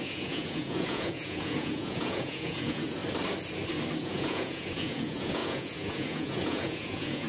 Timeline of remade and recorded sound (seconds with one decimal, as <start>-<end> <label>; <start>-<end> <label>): 0.0-3.0 remade; 3.0-4.0 recorded; 4.0-7.3 remade

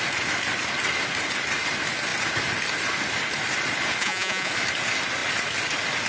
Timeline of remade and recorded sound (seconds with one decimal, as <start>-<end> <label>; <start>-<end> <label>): 0.0-4.0 recorded; 4.0-4.5 remade; 4.5-6.1 recorded

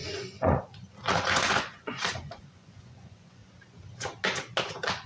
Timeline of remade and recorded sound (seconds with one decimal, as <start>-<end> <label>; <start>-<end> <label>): 0.0-3.4 remade; 3.4-4.6 recorded; 4.6-5.1 remade

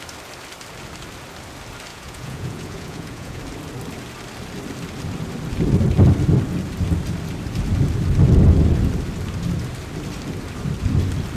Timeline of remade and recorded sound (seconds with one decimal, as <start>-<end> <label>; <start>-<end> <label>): 0.0-1.9 recorded; 1.9-3.4 remade; 3.4-11.4 recorded

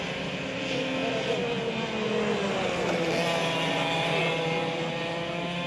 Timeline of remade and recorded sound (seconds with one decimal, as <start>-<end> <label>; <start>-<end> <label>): 0.0-5.7 recorded

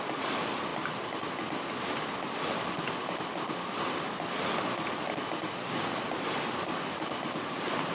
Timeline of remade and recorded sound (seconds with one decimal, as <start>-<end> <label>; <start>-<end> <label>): 0.0-7.9 recorded

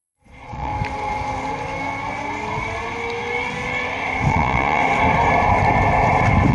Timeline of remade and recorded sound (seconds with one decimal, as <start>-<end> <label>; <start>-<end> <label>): 0.0-0.7 remade; 0.7-4.3 recorded; 4.3-4.8 remade; 4.8-6.5 recorded

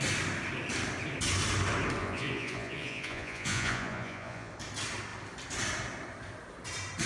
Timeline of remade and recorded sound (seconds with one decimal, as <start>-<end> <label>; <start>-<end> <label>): 0.0-2.0 recorded; 2.0-4.5 remade; 4.5-7.1 recorded